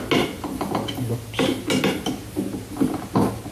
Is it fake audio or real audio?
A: real